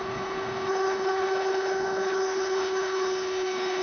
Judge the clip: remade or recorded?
remade